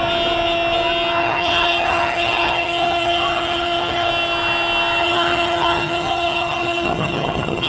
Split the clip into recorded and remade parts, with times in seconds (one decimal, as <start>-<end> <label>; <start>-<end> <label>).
0.0-1.2 recorded; 1.2-4.1 remade; 4.1-5.0 recorded; 5.0-7.7 remade